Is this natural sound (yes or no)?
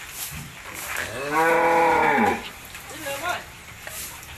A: yes